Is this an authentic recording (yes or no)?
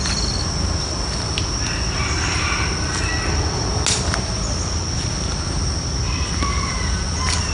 yes